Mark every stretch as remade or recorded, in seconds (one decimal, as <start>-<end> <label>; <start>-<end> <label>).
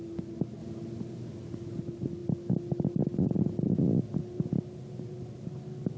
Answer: 0.0-6.0 recorded